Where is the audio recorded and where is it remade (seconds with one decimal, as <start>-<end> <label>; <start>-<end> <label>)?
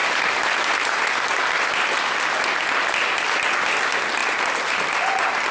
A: 0.0-5.5 recorded